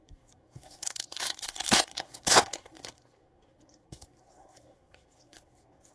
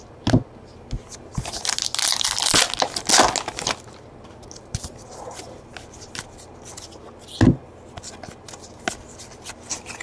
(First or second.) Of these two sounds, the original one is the second